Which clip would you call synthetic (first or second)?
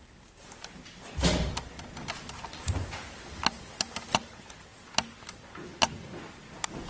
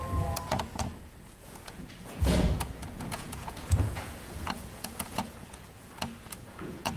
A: second